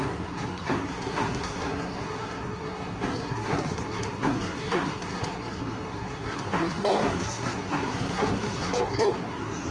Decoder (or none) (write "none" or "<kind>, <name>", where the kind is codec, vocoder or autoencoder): codec, SNAC